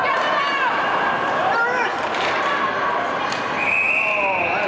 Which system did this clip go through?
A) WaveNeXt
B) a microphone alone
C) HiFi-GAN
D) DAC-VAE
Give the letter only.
B